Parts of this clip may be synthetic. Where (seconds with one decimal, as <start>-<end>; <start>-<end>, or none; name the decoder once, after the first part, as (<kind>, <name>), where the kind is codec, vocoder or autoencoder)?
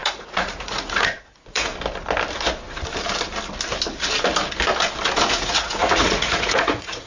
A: 0.0-1.7 (vocoder, Vocos); 5.3-7.1